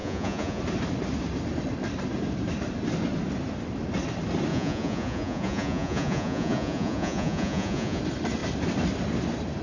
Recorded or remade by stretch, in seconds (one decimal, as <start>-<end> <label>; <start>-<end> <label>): 0.0-0.6 remade; 0.6-4.5 recorded; 4.5-8.0 remade; 8.0-9.6 recorded